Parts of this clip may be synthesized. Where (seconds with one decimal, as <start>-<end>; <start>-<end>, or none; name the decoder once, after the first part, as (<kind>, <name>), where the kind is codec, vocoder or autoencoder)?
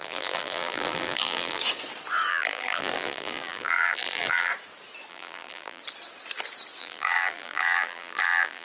0.0-1.6 (vocoder, BigVGAN v2); 2.3-4.5; 5.1-5.8; 6.8-8.6